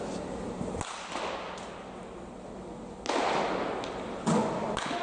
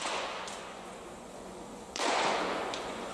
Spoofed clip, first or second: second